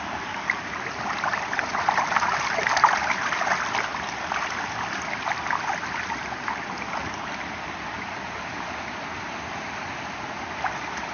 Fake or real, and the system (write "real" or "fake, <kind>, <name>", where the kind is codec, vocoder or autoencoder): fake, vocoder, BigVGAN v2